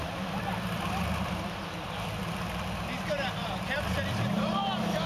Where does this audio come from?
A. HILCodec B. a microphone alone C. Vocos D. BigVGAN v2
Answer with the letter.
D